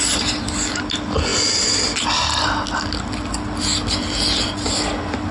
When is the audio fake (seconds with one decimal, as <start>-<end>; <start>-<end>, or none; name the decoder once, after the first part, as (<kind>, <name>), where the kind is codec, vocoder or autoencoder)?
none